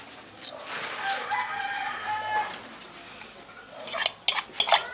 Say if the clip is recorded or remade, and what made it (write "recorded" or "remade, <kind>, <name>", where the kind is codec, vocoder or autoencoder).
recorded